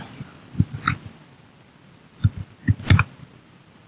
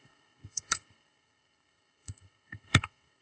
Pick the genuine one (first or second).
first